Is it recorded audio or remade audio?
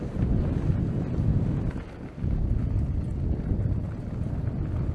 recorded